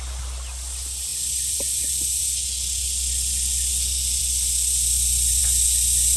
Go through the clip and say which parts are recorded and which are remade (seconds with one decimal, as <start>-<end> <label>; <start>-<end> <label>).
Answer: 0.0-6.2 recorded